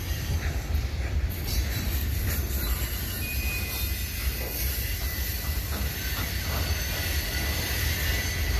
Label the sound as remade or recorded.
recorded